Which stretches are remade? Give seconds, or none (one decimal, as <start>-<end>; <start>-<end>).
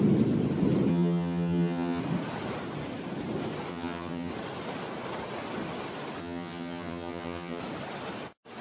0.9-2.0; 3.7-4.3; 6.2-7.6